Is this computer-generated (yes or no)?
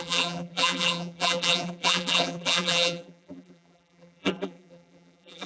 yes